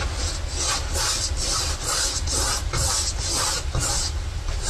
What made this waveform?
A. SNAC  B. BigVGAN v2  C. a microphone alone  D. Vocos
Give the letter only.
C